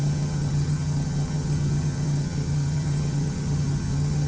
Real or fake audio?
fake